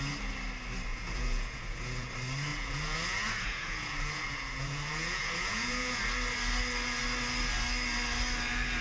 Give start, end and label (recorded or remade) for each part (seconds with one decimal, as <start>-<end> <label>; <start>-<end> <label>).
0.0-0.9 recorded; 0.9-2.1 remade; 2.1-2.5 recorded; 2.5-6.0 remade; 6.0-8.8 recorded